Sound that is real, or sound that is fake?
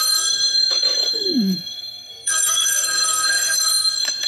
fake